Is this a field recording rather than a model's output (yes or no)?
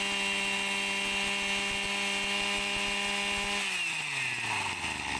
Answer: yes